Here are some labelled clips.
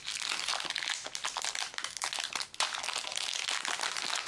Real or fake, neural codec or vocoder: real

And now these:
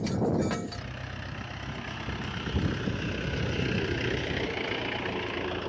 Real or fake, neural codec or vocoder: real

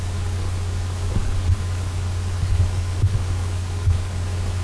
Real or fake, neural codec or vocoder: fake, codec, DAC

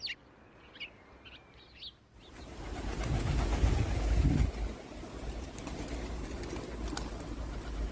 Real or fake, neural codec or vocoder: real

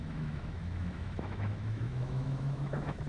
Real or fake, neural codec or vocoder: fake, autoencoder, DAC-VAE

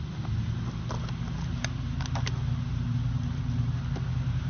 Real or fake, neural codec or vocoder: real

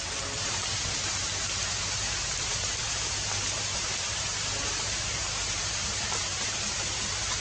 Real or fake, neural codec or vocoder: fake, vocoder, BigVGAN v2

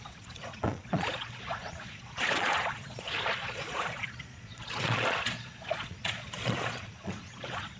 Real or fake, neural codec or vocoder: fake, vocoder, Vocos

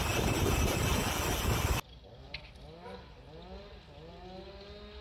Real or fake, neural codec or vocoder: real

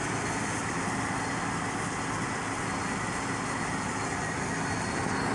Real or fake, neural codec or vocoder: real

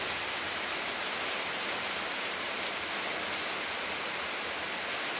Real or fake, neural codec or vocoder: real